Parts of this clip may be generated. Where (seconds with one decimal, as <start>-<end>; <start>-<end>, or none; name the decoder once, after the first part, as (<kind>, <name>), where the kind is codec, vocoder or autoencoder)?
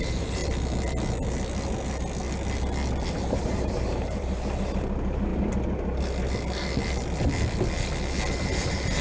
0.0-0.4 (vocoder, BigVGAN v2); 3.1-5.3; 8.3-9.0